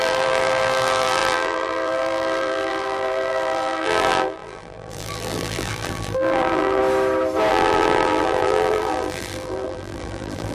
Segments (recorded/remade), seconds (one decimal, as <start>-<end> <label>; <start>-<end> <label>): 0.0-6.8 remade; 6.8-7.5 recorded; 7.5-10.5 remade